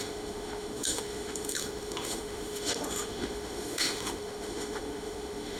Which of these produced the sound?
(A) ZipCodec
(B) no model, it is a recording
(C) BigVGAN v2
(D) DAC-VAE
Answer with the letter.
D